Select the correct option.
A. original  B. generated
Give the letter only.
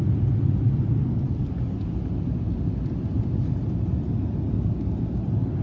A